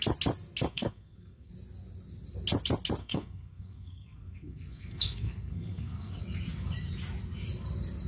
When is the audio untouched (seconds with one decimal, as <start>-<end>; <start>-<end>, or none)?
0.0-0.7; 1.5-3.0; 6.2-8.1